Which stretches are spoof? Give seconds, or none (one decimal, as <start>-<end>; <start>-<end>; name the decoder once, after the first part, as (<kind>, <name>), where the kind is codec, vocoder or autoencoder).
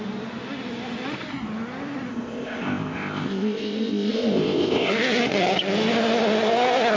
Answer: 2.1-4.9 (codec, ZipCodec)